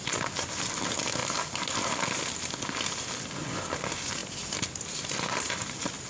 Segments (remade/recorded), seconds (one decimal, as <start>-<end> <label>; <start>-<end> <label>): 0.0-6.1 recorded